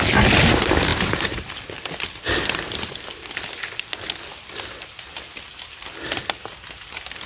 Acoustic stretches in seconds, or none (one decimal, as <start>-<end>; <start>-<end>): 0.0-7.3